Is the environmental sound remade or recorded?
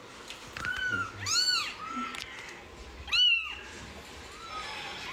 recorded